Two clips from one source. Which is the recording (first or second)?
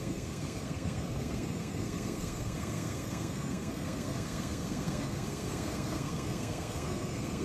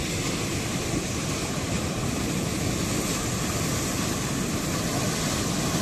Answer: second